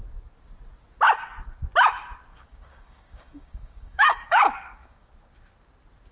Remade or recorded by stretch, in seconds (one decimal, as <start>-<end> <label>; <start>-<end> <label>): 0.0-2.3 recorded; 2.3-5.1 remade; 5.1-6.1 recorded